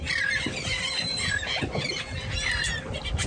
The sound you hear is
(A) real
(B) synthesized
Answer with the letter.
A